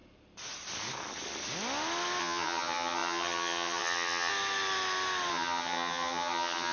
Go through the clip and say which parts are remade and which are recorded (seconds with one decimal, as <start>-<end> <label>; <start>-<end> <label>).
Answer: 0.0-2.2 recorded; 2.2-4.3 remade; 4.3-5.3 recorded; 5.3-6.7 remade